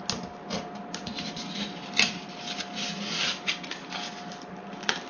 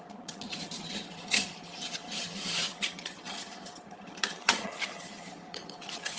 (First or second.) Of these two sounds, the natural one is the first